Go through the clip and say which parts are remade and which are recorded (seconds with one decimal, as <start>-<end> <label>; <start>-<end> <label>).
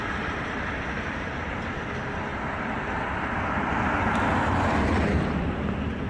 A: 0.0-6.1 recorded